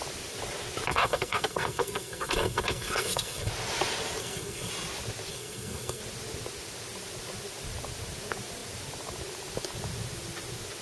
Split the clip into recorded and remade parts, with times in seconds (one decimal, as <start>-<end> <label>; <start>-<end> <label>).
0.0-0.9 recorded; 0.9-3.5 remade; 3.5-4.2 recorded; 4.2-4.7 remade; 4.7-5.3 recorded; 5.3-6.0 remade; 6.0-10.8 recorded